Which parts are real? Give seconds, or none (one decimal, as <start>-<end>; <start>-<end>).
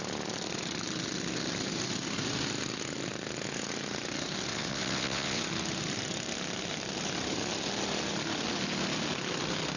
0.0-4.5; 5.4-9.8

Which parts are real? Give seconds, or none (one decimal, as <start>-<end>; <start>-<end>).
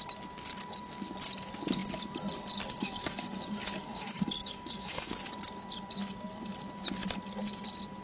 0.0-3.8; 5.1-8.0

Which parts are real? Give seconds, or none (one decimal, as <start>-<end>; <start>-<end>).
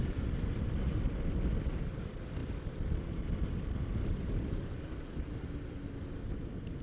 0.0-2.0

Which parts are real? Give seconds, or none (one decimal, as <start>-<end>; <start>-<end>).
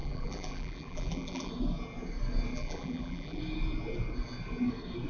1.5-2.5; 3.4-5.1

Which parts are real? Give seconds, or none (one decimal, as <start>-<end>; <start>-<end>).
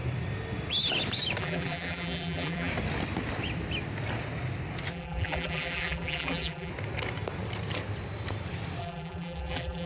0.0-1.4; 2.7-4.9; 6.7-8.8